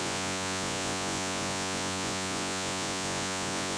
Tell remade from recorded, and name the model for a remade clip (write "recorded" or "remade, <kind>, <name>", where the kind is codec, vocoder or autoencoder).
remade, vocoder, Vocos